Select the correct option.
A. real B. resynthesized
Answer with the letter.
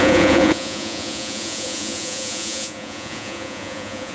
B